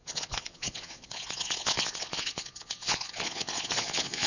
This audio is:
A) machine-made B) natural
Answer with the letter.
A